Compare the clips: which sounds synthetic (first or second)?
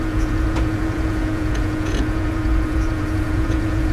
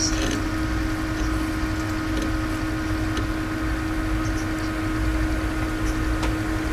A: first